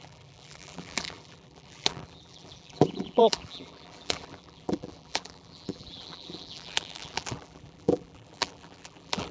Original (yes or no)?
no